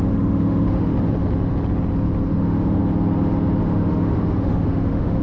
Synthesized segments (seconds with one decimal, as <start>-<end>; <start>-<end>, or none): 0.0-0.9; 2.3-2.8; 3.6-5.2